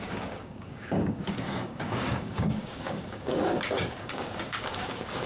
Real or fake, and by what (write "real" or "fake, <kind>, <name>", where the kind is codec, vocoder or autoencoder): fake, codec, DAC